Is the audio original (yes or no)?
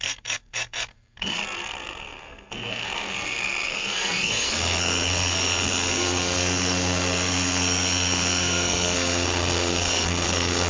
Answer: no